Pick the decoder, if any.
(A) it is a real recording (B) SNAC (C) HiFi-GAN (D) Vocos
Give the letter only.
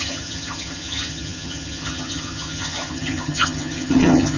C